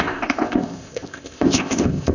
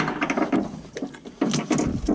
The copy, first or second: first